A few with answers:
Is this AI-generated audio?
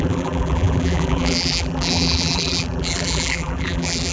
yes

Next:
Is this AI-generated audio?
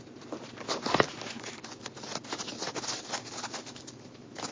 no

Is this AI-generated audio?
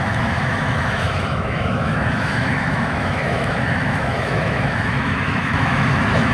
yes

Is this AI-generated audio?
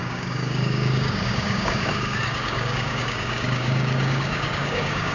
yes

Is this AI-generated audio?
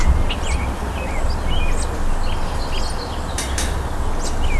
no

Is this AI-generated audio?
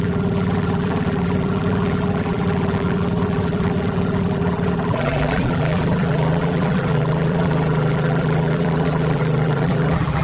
yes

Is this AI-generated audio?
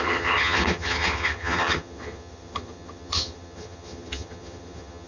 yes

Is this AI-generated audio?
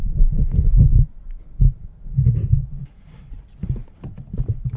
yes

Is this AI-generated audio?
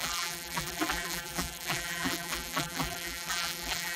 yes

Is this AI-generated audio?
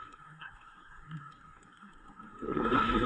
yes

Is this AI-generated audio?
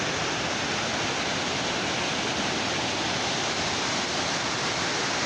no